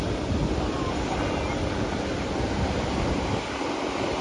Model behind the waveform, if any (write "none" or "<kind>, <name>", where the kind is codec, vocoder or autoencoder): none